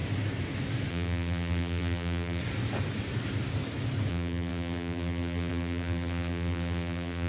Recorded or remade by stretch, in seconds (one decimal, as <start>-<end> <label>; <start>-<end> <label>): 0.0-0.9 recorded; 0.9-2.4 remade; 2.4-4.1 recorded; 4.1-7.3 remade